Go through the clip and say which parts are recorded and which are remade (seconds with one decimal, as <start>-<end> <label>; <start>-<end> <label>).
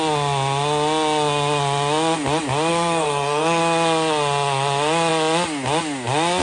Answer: 0.0-2.7 recorded; 2.7-3.6 remade; 3.6-6.4 recorded